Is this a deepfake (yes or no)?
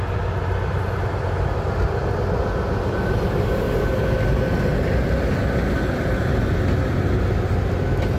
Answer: no